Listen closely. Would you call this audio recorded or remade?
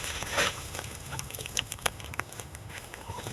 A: remade